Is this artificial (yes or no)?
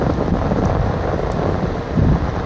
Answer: no